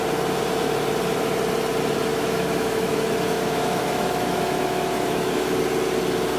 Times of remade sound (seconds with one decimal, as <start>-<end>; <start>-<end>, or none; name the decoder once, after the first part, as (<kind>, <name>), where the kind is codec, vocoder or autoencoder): 2.1-5.6 (autoencoder, DAC-VAE)